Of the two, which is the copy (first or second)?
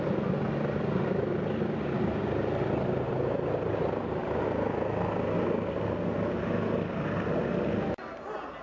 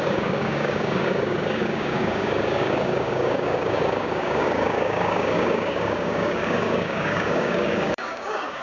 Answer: second